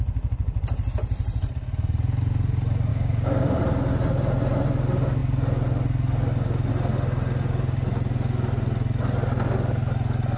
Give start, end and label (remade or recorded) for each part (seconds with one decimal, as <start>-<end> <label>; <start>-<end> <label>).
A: 0.0-2.9 recorded; 2.9-3.6 remade; 3.6-10.4 recorded